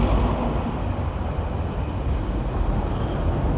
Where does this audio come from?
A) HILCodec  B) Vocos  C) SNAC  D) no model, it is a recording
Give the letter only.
D